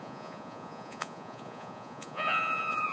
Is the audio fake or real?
fake